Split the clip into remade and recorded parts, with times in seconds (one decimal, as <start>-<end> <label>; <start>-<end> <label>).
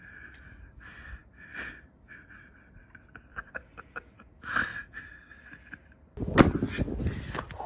0.0-1.2 recorded; 1.2-3.5 remade; 3.5-7.7 recorded